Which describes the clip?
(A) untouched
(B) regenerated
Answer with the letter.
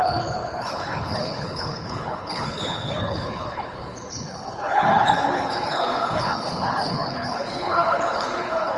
B